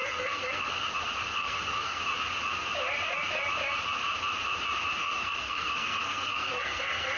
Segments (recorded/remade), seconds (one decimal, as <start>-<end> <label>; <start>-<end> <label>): 0.0-0.7 remade; 0.7-1.4 recorded; 1.4-2.0 remade; 2.0-5.0 recorded; 5.0-7.2 remade